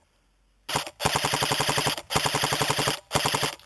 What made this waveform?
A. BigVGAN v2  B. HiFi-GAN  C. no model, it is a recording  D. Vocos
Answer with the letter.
C